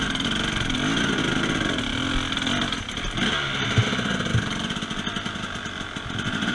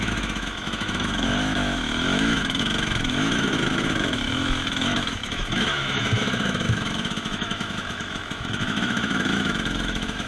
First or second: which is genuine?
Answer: first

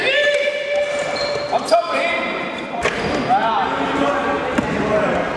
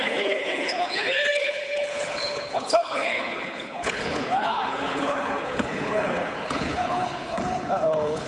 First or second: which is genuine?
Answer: first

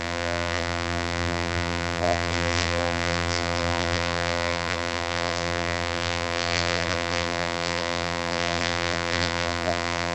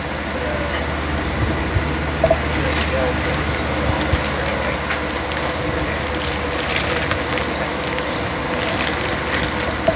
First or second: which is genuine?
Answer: second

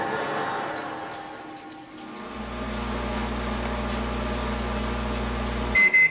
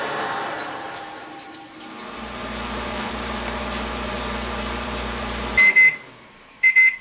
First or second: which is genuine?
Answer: first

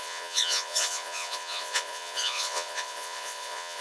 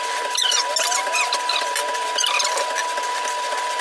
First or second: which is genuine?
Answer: second